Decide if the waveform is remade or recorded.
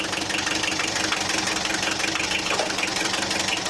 recorded